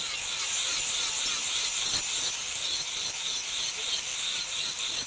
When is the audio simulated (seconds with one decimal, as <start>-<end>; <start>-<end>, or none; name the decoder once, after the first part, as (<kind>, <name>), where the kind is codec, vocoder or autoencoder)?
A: 2.4-3.1 (vocoder, BigVGAN v2); 4.3-5.1